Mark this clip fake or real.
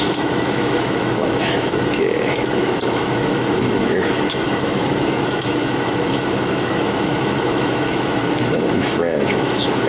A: fake